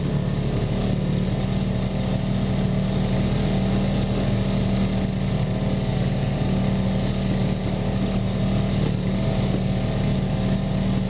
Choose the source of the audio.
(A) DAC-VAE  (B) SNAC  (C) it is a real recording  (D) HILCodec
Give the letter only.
C